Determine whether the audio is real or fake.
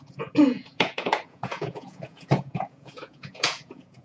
fake